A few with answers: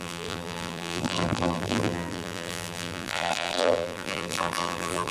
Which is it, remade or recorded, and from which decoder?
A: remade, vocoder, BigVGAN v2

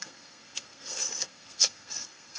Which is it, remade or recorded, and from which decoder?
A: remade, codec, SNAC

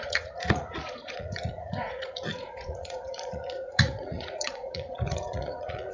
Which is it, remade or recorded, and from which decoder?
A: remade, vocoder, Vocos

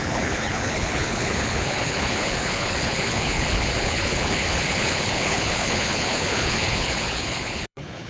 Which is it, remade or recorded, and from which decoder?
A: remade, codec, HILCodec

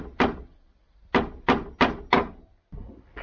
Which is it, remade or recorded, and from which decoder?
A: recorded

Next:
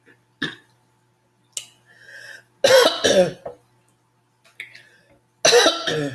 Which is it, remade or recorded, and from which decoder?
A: recorded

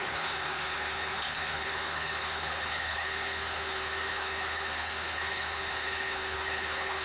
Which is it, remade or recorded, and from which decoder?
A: remade, codec, HILCodec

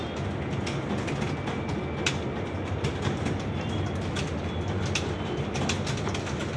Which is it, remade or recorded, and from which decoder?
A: recorded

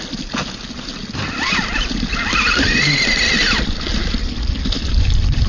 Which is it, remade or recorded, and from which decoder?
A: recorded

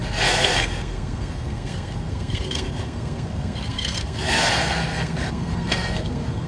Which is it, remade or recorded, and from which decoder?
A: remade, codec, SNAC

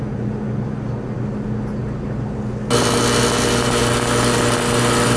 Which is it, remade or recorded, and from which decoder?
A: recorded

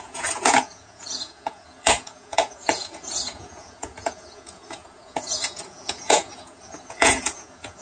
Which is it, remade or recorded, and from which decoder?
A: remade, vocoder, Vocos